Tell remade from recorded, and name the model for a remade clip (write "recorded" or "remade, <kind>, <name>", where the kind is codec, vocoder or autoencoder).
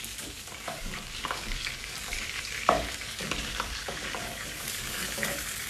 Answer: remade, codec, DAC